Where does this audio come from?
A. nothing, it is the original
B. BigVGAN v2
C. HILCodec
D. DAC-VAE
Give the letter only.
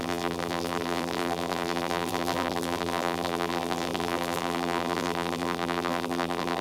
B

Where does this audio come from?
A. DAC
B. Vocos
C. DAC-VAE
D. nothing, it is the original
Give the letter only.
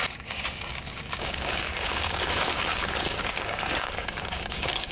A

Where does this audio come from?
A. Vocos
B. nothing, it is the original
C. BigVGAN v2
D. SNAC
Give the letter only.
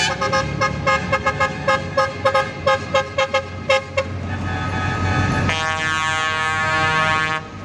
B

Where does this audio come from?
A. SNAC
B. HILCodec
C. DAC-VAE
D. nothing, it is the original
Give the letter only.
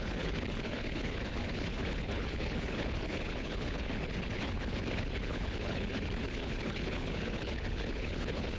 B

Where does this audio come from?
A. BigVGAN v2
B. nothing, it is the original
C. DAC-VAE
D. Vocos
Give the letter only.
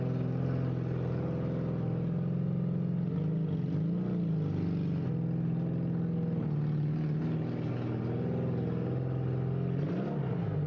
B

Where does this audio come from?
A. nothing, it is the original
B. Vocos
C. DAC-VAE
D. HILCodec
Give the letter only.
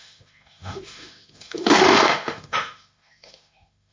C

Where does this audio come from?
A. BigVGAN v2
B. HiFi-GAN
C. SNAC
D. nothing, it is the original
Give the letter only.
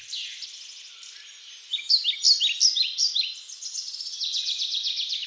D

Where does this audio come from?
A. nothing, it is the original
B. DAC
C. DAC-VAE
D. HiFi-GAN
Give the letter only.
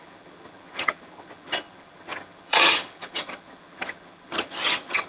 D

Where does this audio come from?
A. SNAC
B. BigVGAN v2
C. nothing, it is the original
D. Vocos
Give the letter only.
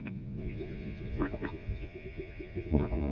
D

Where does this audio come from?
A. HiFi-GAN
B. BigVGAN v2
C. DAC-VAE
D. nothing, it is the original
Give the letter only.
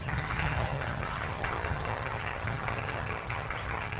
A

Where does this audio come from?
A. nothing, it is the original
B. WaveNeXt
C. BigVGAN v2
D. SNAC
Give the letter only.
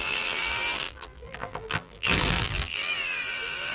C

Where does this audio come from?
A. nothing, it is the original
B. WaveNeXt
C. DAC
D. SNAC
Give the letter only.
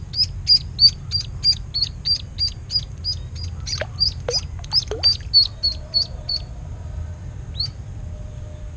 A